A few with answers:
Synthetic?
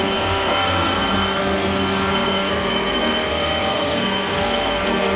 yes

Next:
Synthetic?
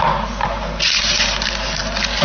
no